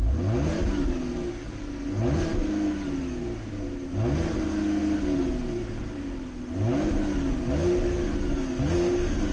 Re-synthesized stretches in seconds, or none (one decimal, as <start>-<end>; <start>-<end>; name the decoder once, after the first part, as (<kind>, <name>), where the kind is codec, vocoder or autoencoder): none

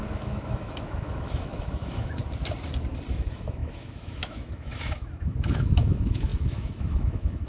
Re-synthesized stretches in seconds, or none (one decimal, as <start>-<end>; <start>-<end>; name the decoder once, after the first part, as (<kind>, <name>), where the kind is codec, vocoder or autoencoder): 0.0-2.2 (autoencoder, DAC-VAE); 3.1-7.5

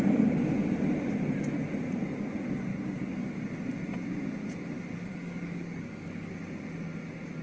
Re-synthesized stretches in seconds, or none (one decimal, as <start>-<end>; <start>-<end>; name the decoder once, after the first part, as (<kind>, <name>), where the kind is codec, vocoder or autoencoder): 2.7-3.4 (codec, DAC); 5.1-6.3

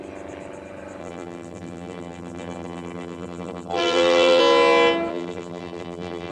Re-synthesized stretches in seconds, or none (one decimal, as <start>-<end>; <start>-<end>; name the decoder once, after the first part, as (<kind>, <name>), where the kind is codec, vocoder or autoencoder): 1.0-4.4 (vocoder, BigVGAN v2); 5.1-6.3